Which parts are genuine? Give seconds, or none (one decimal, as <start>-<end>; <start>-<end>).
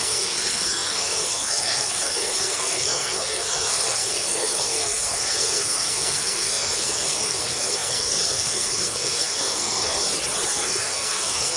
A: 10.0-10.5